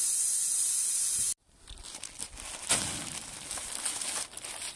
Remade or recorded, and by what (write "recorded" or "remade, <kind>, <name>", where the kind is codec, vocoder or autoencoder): recorded